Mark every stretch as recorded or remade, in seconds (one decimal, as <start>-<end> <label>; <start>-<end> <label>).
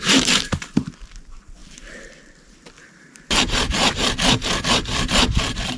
0.0-5.8 remade